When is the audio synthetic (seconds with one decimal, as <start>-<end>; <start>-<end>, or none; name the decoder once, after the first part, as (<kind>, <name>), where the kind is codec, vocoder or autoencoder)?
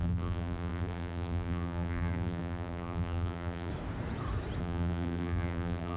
0.0-3.7 (vocoder, BigVGAN v2); 4.6-6.0